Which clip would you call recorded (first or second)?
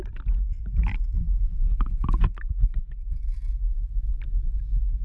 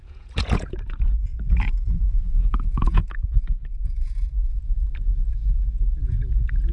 first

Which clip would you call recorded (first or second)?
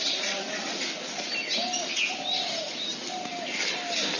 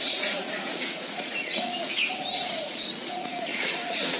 first